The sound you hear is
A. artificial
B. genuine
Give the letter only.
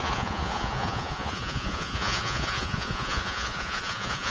A